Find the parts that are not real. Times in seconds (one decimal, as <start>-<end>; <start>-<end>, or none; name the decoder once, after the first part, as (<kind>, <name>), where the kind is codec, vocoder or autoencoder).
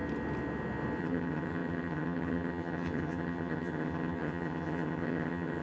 1.0-5.6 (vocoder, HiFi-GAN)